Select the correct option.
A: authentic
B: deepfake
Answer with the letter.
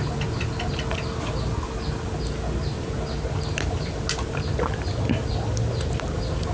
A